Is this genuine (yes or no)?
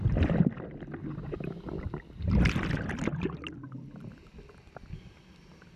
yes